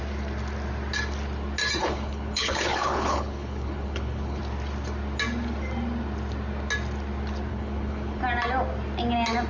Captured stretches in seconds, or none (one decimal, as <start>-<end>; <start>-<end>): 0.0-1.8; 4.4-7.5; 8.2-9.5